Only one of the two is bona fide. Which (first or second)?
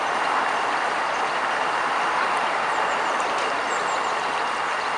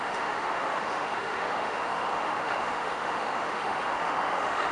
first